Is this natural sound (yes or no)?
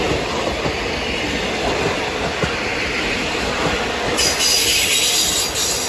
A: yes